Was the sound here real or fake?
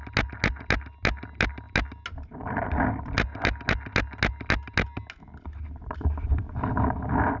real